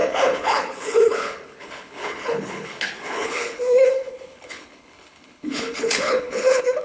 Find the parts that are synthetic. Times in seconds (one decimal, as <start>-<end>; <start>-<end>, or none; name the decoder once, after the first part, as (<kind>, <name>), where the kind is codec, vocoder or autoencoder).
0.0-6.8 (codec, HILCodec)